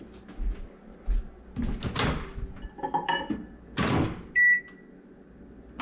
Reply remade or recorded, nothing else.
recorded